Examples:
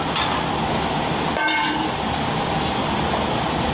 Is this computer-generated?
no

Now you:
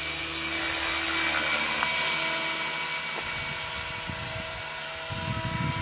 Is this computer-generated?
no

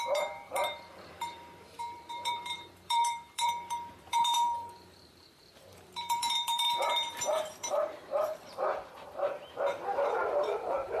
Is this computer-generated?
yes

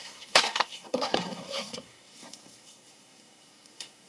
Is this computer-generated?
yes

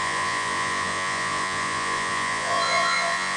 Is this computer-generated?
yes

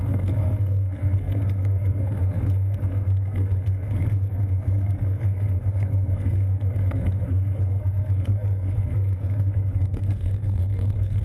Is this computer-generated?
yes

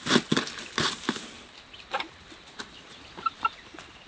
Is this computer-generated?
no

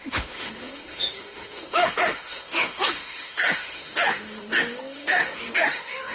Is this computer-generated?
yes